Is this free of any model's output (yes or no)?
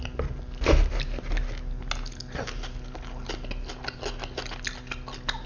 yes